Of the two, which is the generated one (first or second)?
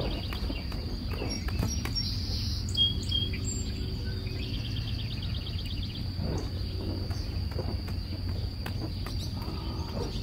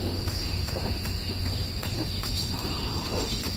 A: second